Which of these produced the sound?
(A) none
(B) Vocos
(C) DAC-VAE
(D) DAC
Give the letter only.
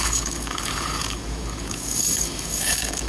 D